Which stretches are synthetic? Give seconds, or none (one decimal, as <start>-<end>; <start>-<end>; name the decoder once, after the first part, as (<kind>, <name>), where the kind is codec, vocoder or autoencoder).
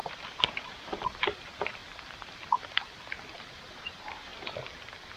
0.0-1.8 (vocoder, BigVGAN v2); 3.4-4.3